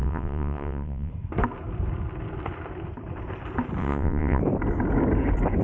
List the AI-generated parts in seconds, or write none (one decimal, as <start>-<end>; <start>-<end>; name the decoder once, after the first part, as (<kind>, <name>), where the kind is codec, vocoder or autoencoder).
0.0-1.1 (vocoder, WaveNeXt); 3.8-4.4